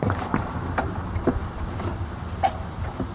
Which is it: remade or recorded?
recorded